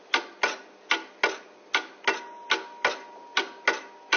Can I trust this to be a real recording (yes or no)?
yes